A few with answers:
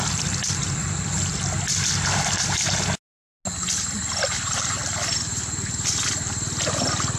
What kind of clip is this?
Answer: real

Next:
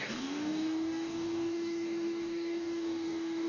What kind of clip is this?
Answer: fake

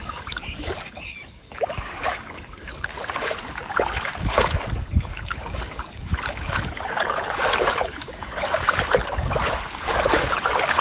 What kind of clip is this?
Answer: fake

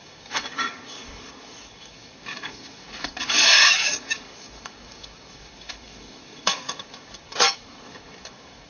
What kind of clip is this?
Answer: fake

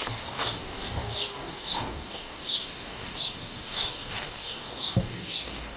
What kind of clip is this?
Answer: fake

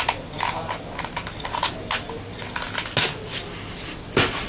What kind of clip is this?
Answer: real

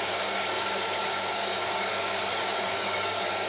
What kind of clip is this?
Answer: fake